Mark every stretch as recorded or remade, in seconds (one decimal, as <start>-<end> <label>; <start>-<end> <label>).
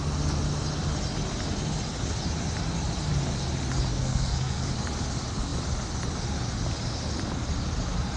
0.0-3.9 recorded; 3.9-4.7 remade; 4.7-8.2 recorded